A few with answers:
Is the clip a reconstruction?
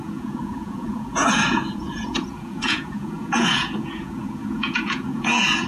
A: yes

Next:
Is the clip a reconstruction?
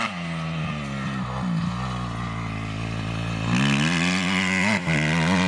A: no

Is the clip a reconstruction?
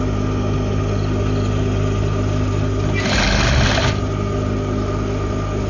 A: no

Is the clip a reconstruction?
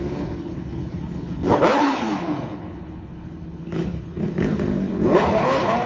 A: yes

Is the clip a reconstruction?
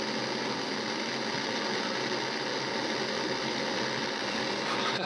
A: no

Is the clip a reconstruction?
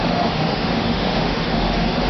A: yes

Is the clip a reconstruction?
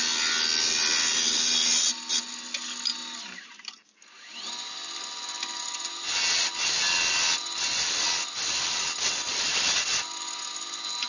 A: no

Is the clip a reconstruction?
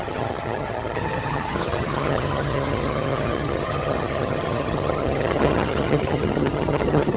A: yes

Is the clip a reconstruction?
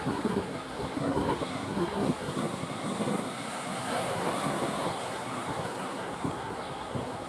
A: yes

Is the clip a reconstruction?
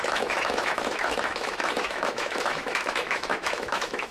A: yes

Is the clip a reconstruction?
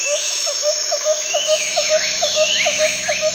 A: yes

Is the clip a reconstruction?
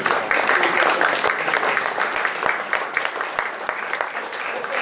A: yes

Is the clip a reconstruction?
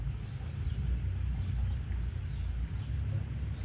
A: no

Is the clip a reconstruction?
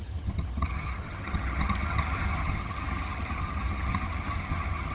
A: yes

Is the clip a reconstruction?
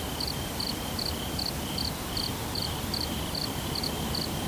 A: no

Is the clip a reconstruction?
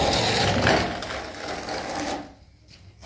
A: no